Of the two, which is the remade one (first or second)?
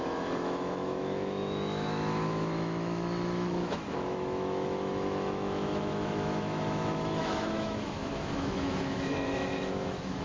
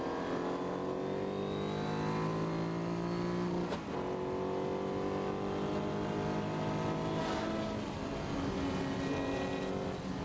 first